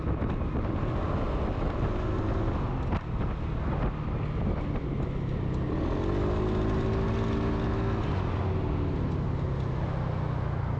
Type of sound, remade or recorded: recorded